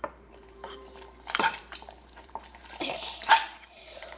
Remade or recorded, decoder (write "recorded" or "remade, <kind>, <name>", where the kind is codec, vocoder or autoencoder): remade, vocoder, BigVGAN v2